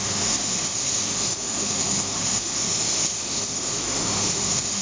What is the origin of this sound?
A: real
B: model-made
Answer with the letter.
B